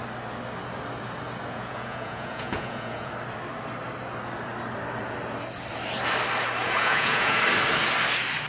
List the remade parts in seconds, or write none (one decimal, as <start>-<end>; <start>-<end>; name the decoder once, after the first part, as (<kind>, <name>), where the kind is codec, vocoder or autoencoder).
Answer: 1.5-3.1 (vocoder, Vocos); 6.6-7.4